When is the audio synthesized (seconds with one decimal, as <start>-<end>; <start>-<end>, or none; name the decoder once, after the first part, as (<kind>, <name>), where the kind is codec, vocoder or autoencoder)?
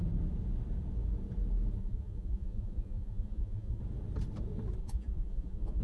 1.8-3.8 (vocoder, Vocos); 4.8-5.8